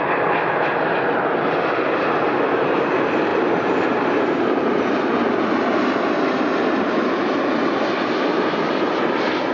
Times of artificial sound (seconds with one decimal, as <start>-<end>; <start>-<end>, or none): none